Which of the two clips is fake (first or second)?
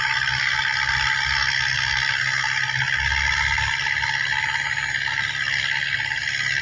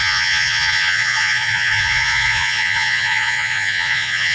second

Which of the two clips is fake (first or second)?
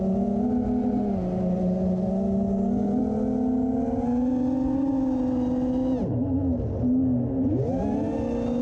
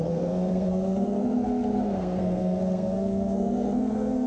second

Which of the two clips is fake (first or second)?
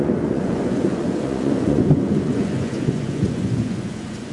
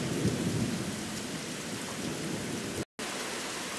first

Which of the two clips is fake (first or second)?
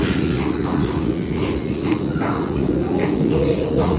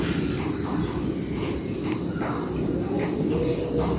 first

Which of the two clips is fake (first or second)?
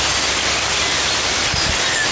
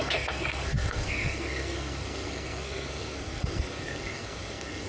second